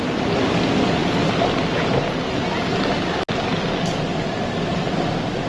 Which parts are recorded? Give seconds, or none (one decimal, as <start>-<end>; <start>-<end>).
0.0-5.5